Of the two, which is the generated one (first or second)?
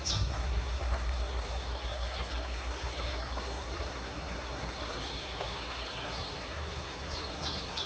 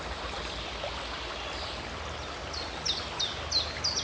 first